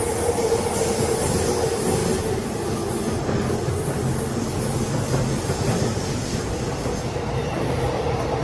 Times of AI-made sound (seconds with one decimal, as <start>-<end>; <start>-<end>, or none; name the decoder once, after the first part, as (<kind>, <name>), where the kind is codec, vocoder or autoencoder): none